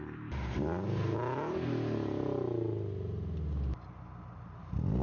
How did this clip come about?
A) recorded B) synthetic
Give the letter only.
A